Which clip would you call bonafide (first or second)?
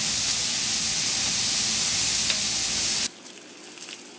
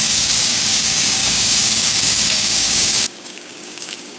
first